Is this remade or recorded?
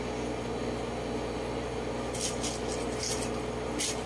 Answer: recorded